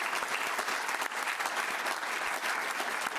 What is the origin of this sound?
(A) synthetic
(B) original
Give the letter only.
B